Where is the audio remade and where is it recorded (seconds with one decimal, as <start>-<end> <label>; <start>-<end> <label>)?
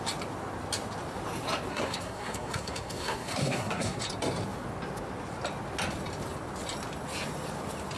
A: 0.0-1.7 recorded; 1.7-4.0 remade; 4.0-8.0 recorded